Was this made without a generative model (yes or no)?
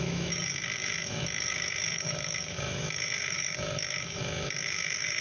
no